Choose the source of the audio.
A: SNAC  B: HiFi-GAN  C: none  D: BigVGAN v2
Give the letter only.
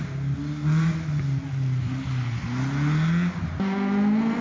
C